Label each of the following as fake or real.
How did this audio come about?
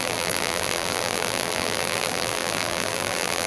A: fake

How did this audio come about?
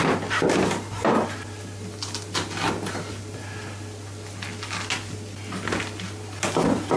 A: real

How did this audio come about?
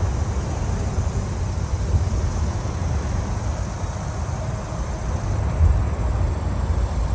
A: real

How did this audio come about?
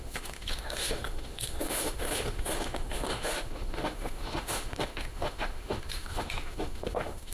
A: fake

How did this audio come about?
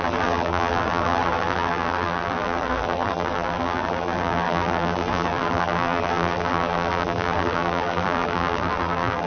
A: fake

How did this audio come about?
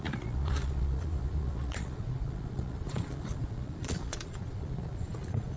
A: fake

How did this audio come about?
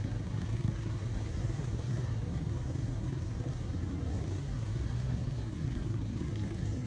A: fake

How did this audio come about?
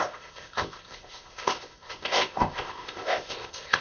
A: fake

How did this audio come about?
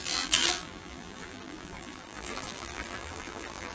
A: fake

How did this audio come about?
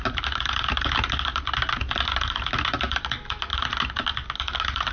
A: real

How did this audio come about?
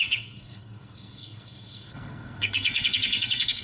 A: fake